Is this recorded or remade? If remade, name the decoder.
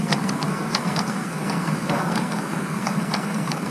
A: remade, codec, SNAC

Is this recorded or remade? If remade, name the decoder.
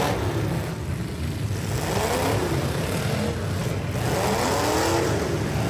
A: recorded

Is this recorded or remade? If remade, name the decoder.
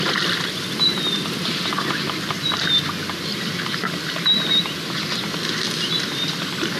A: recorded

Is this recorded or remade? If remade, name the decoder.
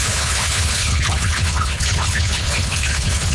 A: remade, codec, HILCodec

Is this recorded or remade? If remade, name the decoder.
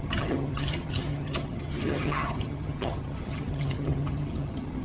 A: remade, vocoder, HiFi-GAN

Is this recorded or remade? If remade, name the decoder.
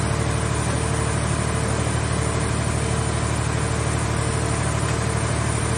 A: recorded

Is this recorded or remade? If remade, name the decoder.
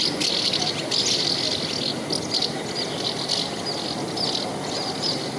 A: recorded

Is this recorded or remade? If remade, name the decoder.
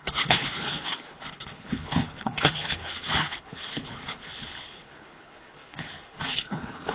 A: remade, codec, HILCodec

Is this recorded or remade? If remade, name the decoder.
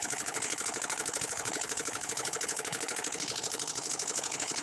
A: remade, codec, HILCodec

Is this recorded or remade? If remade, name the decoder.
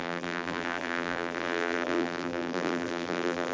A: remade, vocoder, BigVGAN v2